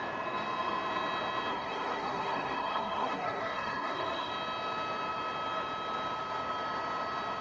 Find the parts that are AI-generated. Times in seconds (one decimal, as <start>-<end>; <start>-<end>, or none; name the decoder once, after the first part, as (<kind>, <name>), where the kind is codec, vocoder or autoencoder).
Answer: 1.5-4.3 (codec, SNAC)